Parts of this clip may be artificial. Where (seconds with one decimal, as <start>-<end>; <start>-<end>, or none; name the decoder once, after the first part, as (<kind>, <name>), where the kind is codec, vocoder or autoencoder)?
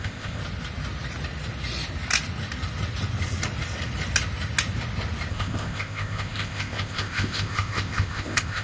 0.0-0.4 (codec, ZipCodec); 5.3-8.6